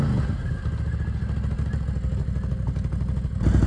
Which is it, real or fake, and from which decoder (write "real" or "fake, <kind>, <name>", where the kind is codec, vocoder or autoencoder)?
real